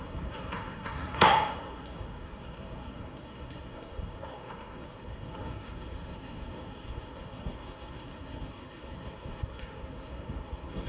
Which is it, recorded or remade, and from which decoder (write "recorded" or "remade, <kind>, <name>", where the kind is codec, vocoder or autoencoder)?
remade, codec, SNAC